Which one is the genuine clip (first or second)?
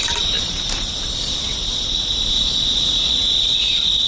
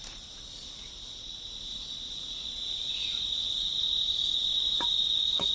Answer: second